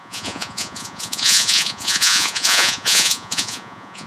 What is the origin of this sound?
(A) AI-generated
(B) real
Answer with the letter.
A